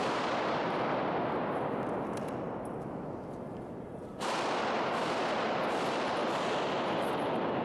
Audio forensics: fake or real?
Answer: real